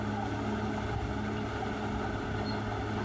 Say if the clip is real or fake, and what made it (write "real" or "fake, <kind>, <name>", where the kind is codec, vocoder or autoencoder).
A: real